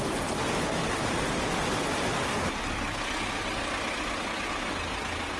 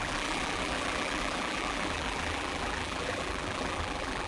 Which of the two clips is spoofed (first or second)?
second